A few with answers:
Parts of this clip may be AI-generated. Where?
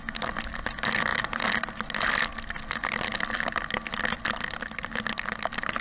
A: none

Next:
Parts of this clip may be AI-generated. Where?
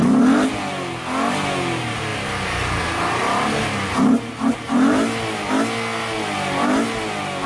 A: none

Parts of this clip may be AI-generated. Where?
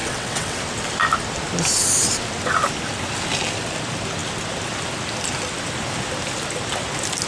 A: 0.0-0.6 (vocoder, WaveNeXt)